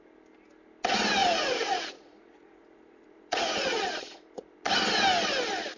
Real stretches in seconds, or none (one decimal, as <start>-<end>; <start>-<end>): 0.0-1.2; 4.7-5.8